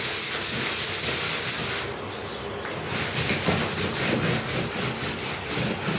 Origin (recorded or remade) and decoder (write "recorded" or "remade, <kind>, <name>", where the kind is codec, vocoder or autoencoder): recorded